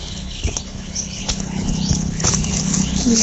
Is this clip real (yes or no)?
no